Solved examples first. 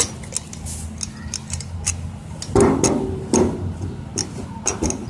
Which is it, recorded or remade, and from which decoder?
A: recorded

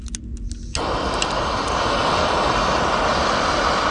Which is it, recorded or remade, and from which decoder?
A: recorded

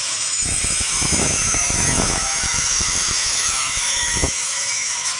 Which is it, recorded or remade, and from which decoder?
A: remade, autoencoder, DAC-VAE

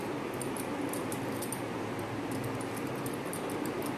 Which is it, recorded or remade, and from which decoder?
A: recorded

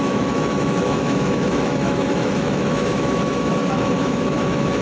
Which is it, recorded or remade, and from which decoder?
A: remade, autoencoder, DAC-VAE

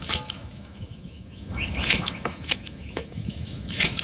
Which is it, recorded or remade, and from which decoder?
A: remade, autoencoder, DAC-VAE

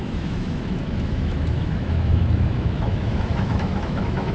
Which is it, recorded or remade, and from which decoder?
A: remade, autoencoder, DAC-VAE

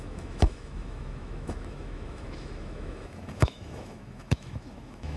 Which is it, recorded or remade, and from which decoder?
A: remade, autoencoder, DAC-VAE